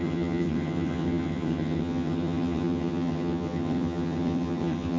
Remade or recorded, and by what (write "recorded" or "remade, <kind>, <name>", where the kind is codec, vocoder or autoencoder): remade, vocoder, HiFi-GAN